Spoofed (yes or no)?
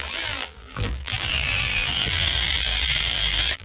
yes